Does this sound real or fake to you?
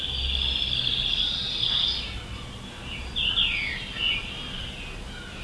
real